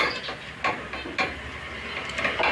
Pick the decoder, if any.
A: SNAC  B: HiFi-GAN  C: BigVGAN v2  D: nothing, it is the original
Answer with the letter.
D